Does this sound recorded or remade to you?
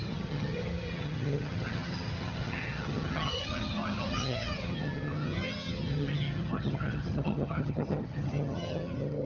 remade